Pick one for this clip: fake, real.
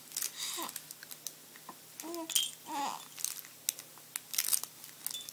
real